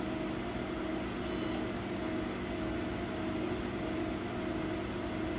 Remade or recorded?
recorded